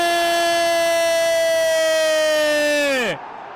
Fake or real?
real